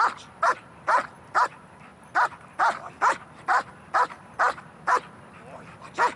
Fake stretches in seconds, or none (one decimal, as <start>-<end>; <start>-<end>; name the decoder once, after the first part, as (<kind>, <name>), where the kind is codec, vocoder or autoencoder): none